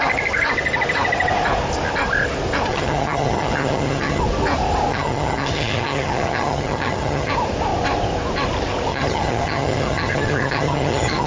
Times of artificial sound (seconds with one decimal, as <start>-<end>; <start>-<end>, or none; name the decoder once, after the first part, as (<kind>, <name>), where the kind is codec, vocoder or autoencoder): 2.7-4.2 (vocoder, HiFi-GAN); 4.9-7.3; 8.9-11.3